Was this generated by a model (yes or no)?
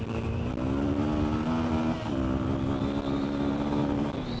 no